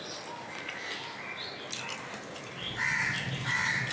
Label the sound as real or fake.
real